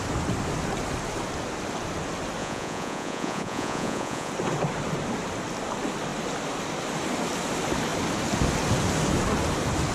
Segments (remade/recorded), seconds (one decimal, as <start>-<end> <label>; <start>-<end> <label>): 0.0-2.4 recorded; 2.4-4.3 remade; 4.3-9.9 recorded